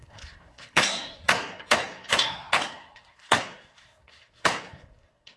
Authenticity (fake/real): fake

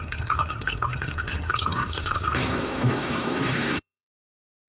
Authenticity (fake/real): fake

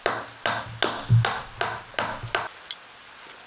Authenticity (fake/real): real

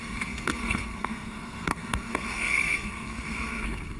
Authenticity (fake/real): fake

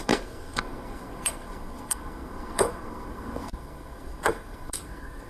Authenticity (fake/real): fake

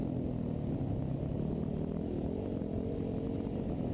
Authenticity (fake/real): real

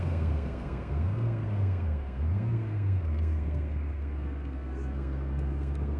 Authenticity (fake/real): fake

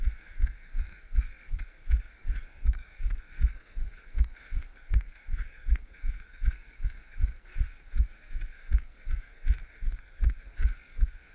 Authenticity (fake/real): fake